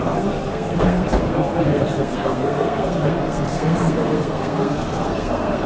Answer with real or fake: fake